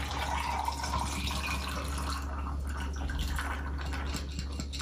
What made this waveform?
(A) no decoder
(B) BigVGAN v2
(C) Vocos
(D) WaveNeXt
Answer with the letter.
A